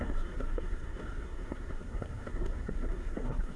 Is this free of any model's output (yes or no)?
no